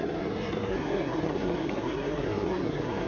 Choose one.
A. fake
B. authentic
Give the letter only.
A